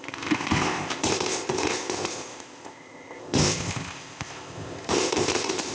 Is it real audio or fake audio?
fake